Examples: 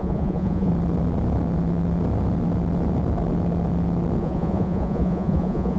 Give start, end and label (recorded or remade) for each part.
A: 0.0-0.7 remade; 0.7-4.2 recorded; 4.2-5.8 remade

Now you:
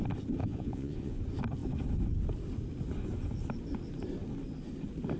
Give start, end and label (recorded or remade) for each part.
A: 0.0-0.4 recorded; 0.4-1.2 remade; 1.2-5.2 recorded

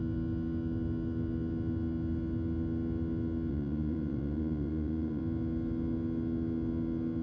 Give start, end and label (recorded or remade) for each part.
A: 0.0-3.5 recorded; 3.5-5.2 remade; 5.2-7.2 recorded